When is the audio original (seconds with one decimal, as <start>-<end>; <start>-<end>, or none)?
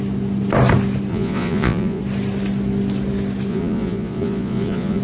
0.0-1.1; 2.0-3.5